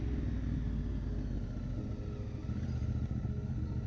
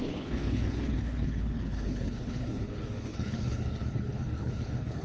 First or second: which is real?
first